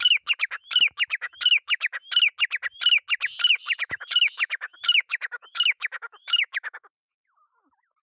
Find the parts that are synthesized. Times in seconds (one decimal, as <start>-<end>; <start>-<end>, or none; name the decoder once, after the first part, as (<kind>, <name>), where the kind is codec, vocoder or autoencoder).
0.0-2.0 (autoencoder, DAC-VAE); 3.5-8.0